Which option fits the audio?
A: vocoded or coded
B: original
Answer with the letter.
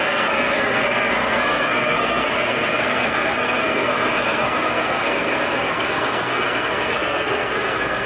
A